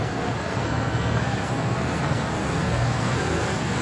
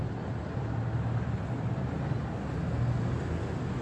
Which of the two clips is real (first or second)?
second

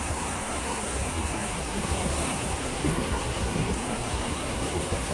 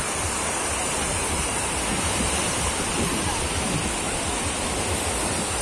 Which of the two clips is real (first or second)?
second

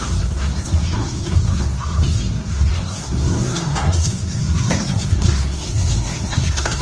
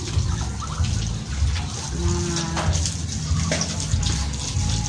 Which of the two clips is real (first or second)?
second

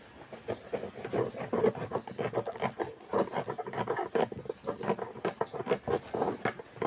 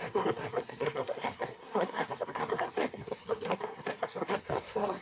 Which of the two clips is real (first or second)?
first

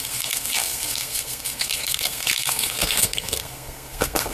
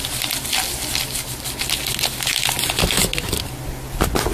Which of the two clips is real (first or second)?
second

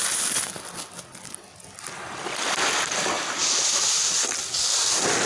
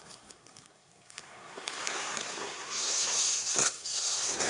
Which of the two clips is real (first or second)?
first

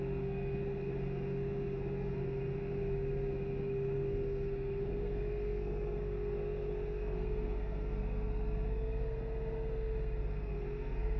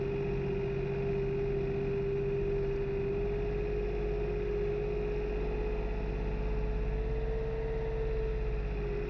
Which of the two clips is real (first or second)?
second